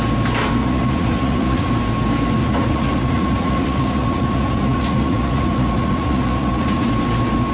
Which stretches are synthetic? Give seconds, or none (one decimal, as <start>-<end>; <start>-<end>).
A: 0.6-1.7; 2.4-6.9